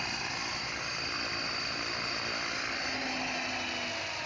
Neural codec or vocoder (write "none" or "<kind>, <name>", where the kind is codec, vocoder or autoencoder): none